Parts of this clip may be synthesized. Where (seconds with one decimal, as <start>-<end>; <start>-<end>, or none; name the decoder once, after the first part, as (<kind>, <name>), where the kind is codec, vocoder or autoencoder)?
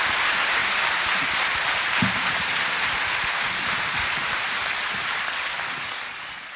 0.6-1.2 (vocoder, BigVGAN v2); 2.0-5.3